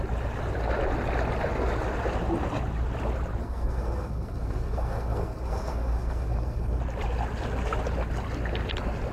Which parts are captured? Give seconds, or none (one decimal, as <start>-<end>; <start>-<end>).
0.0-3.4; 6.8-9.1